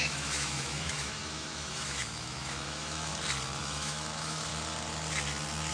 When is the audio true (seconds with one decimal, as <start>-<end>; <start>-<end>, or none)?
3.1-3.6; 4.5-5.7